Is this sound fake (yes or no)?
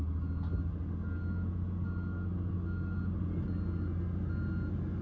no